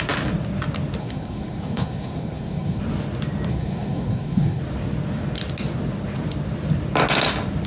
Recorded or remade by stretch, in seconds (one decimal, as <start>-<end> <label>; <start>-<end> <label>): 0.0-1.0 recorded; 1.0-2.8 remade; 2.8-3.5 recorded; 3.5-4.6 remade; 4.6-7.7 recorded